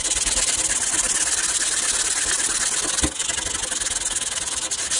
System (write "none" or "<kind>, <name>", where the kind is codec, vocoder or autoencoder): none